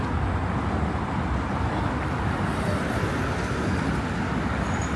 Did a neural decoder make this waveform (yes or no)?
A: no